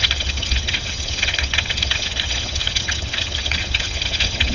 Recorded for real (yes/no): no